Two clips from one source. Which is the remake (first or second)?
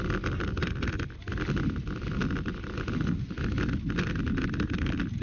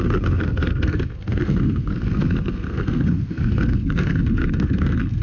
second